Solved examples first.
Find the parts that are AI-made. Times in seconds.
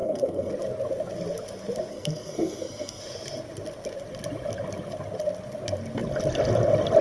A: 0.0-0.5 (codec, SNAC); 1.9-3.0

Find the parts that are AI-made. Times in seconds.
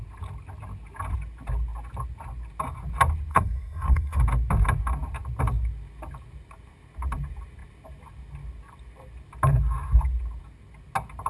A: 3.3-4.2 (codec, SNAC)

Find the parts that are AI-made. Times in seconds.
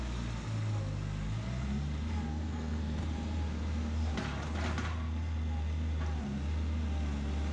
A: 2.3-3.0 (codec, SNAC)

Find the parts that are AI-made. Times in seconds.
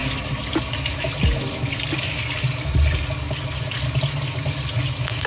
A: none